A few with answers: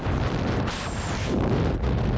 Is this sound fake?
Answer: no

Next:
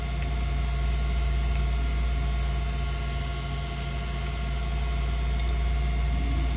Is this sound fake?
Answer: no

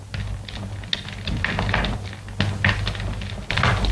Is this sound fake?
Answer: no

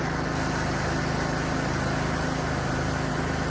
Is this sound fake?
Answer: no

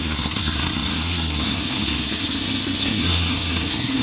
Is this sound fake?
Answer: yes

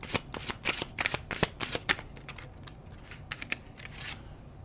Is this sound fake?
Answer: no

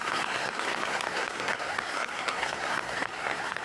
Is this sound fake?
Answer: yes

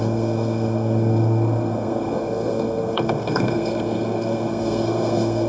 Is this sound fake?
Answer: yes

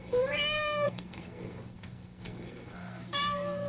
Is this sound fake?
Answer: yes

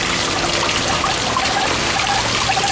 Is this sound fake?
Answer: no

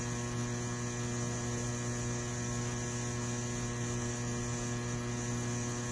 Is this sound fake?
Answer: no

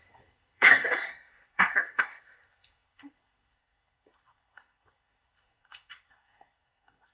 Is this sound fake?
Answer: yes